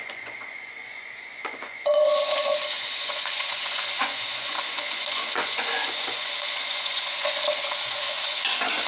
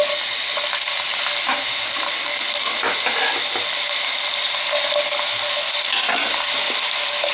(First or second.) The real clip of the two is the second